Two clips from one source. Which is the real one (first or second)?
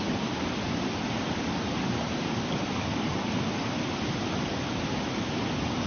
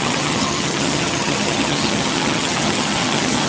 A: first